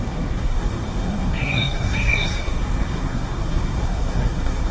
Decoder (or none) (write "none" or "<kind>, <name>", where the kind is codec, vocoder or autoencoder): codec, SNAC